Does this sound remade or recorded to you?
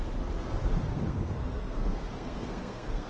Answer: remade